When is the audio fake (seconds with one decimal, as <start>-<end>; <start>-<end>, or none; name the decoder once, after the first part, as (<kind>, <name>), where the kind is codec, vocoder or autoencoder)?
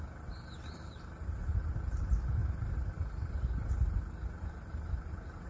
none